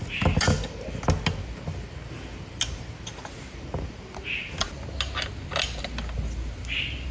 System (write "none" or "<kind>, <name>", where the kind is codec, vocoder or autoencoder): none